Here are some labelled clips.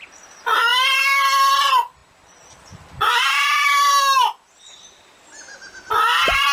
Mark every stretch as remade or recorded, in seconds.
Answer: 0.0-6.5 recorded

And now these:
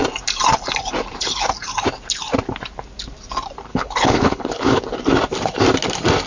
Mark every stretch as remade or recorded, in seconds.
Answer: 0.0-3.7 recorded; 3.7-4.8 remade; 4.8-6.3 recorded

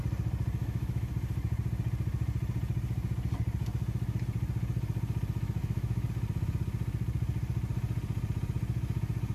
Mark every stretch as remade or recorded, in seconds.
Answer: 0.0-0.6 recorded; 0.6-1.1 remade; 1.1-5.6 recorded; 5.6-6.1 remade; 6.1-9.3 recorded

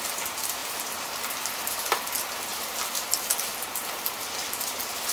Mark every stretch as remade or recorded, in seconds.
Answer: 0.0-0.6 recorded; 0.6-2.0 remade; 2.0-2.5 recorded; 2.5-3.8 remade; 3.8-5.1 recorded

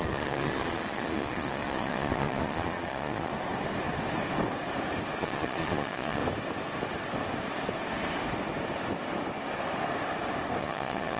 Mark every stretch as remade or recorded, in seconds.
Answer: 0.0-3.3 remade; 3.3-5.2 recorded; 5.2-6.2 remade; 6.2-10.6 recorded; 10.6-11.2 remade

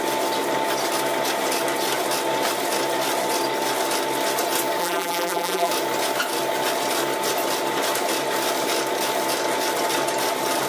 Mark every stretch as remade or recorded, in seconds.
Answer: 0.0-4.8 recorded; 4.8-5.7 remade; 5.7-10.7 recorded

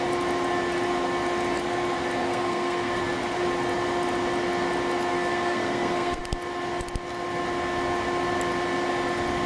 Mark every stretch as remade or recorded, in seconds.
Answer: 0.0-2.2 recorded; 2.2-3.0 remade; 3.0-5.1 recorded; 5.1-6.2 remade; 6.2-9.5 recorded

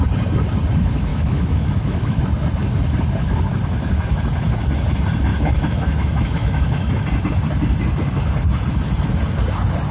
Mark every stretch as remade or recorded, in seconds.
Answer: 0.0-1.1 recorded; 1.1-2.2 remade; 2.2-5.3 recorded; 5.3-6.9 remade; 6.9-9.9 recorded